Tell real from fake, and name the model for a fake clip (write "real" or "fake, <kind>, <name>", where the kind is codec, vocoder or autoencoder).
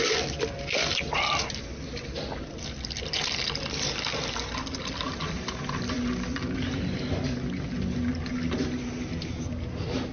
real